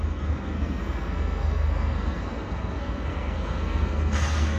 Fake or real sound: fake